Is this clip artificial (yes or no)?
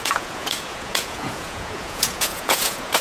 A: yes